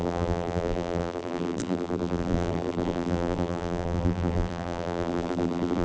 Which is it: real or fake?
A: fake